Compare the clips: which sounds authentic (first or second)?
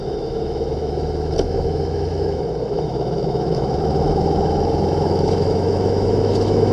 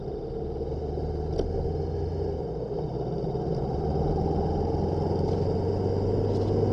second